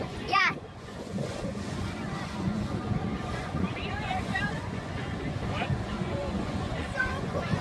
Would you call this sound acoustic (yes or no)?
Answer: no